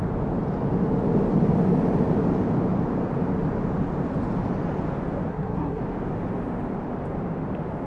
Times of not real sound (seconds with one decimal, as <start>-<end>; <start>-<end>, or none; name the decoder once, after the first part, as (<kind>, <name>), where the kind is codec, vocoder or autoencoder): 5.3-5.8 (codec, SNAC)